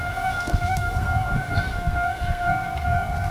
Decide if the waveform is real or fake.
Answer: fake